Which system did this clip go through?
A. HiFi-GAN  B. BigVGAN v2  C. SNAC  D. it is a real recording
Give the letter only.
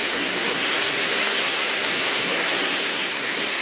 C